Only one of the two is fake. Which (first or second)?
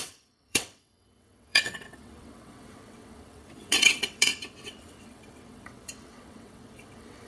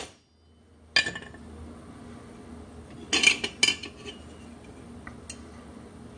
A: first